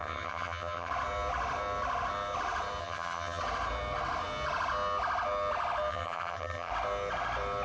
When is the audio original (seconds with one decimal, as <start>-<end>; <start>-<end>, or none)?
0.9-2.8; 3.4-5.9; 6.7-7.6